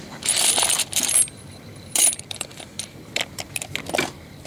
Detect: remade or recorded remade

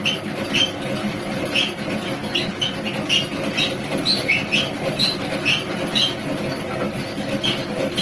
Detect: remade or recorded recorded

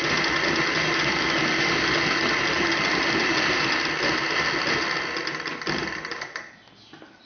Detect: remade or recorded recorded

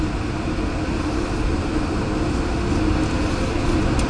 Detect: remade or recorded recorded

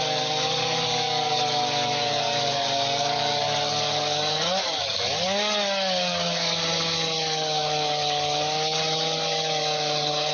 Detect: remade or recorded remade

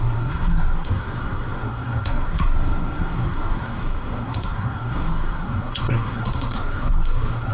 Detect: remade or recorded remade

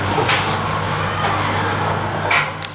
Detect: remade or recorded recorded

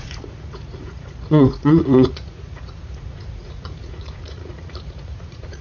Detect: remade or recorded remade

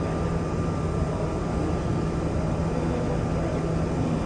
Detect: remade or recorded recorded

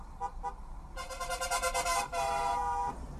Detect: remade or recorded remade